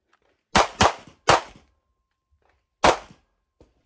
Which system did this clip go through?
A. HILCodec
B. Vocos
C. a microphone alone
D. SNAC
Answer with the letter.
C